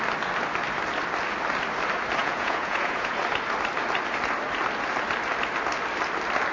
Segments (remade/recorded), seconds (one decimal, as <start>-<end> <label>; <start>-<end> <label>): 0.0-2.2 recorded; 2.2-3.2 remade; 3.2-6.5 recorded